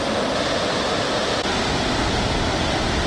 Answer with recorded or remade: recorded